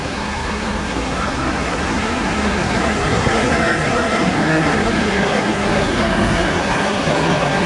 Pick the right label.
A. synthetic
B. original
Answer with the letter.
A